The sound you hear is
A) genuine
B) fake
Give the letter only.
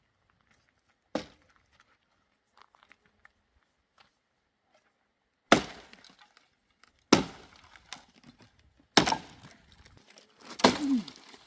A